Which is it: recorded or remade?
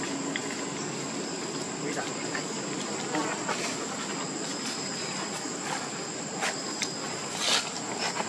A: recorded